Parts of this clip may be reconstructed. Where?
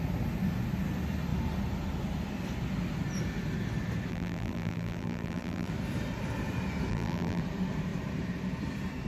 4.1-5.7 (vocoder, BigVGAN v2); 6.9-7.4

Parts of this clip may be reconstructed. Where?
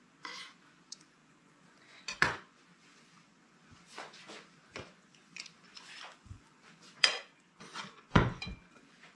0.0-9.2 (vocoder, Vocos)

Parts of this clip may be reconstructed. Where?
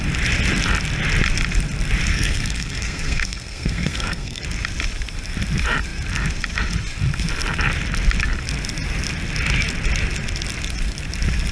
2.1-4.4 (codec, SNAC)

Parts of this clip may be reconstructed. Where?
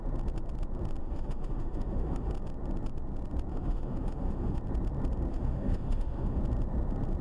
1.0-2.3 (autoencoder, DAC-VAE); 3.5-4.6; 5.3-6.4